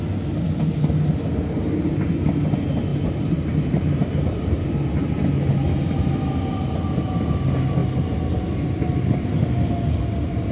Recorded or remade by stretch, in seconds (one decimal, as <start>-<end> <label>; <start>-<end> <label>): 0.0-2.9 recorded; 2.9-5.6 remade; 5.6-10.5 recorded